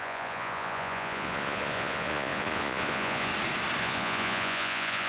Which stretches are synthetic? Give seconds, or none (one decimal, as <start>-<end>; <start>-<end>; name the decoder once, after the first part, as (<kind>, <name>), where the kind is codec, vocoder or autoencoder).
0.0-3.3 (vocoder, Vocos); 3.8-5.1

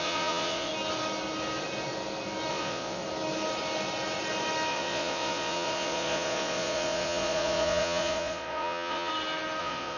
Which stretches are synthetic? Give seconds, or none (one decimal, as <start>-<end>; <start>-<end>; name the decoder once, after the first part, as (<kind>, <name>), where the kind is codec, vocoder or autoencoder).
0.0-0.7 (vocoder, Vocos); 2.5-3.0; 4.7-9.1; 9.6-10.0

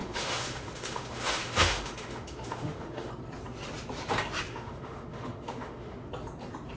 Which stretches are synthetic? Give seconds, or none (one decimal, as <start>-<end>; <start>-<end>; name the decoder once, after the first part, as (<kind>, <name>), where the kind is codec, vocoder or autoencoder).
0.0-3.1 (autoencoder, DAC-VAE); 4.5-6.1

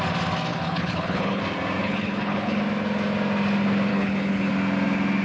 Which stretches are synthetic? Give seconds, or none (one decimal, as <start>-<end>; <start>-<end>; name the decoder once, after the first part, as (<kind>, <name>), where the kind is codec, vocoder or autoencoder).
0.5-1.4 (codec, HILCodec); 1.8-2.6; 3.9-4.5

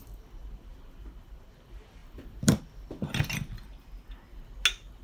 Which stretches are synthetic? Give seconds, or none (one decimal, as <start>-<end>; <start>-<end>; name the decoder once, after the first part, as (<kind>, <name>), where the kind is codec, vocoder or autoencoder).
2.0-2.6 (vocoder, BigVGAN v2)

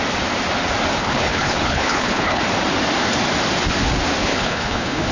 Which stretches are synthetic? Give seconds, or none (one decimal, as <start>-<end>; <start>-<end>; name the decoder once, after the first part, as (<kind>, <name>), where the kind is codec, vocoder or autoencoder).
1.0-2.4 (codec, HILCodec); 4.2-5.1

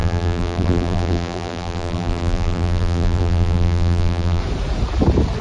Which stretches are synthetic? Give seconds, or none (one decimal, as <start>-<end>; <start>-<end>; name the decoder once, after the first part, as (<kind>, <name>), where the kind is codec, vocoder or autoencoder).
0.0-4.4 (vocoder, BigVGAN v2)

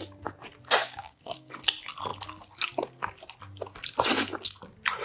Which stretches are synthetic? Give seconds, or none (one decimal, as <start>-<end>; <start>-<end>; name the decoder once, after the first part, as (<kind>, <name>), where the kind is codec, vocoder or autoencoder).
0.8-1.5 (codec, DAC)